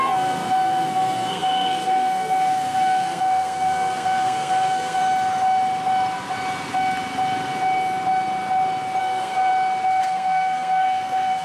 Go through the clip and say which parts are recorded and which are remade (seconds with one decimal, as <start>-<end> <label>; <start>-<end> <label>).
0.0-5.0 remade; 5.0-9.0 recorded; 9.0-9.5 remade; 9.5-10.0 recorded; 10.0-11.4 remade